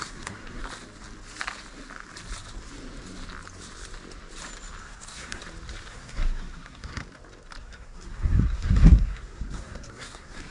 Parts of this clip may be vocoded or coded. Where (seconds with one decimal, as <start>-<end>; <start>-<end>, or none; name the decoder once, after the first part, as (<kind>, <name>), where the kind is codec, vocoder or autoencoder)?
0.0-0.6 (codec, SNAC); 4.8-5.4; 5.9-7.0; 7.6-10.5